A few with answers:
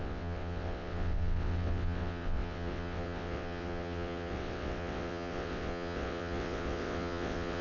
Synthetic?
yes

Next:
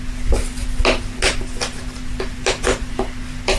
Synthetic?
no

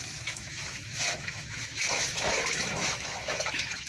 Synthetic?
yes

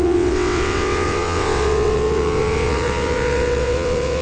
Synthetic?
yes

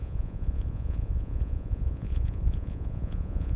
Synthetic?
yes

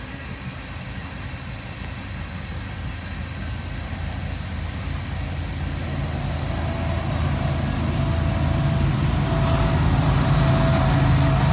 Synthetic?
no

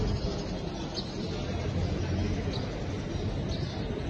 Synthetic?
no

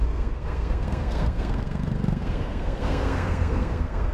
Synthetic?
yes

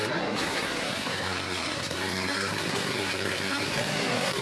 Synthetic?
yes